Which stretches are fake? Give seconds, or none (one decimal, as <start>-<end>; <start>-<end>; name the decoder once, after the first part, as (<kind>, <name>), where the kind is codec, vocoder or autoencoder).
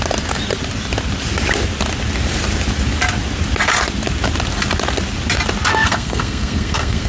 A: 5.7-7.1 (codec, SNAC)